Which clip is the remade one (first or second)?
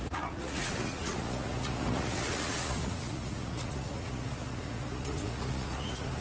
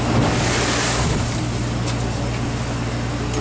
first